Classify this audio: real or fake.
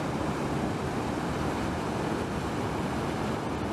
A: real